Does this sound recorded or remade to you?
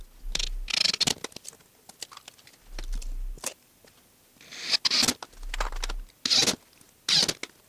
recorded